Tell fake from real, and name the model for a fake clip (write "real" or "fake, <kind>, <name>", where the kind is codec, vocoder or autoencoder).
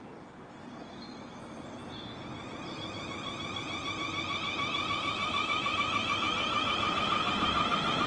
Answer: real